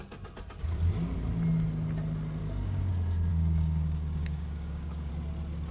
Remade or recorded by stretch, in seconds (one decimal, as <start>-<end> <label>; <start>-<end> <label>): 0.0-2.4 recorded; 2.4-2.9 remade; 2.9-3.3 recorded; 3.3-5.1 remade; 5.1-5.7 recorded